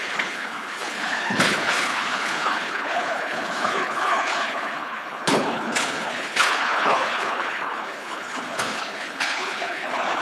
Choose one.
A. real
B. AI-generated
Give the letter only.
B